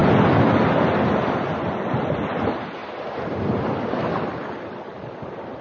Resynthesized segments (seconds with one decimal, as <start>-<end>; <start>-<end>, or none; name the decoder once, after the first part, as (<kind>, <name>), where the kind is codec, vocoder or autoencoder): none